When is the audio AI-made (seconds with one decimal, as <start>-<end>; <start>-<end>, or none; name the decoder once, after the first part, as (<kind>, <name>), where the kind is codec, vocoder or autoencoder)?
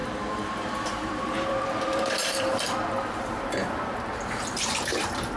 0.0-5.4 (vocoder, BigVGAN v2)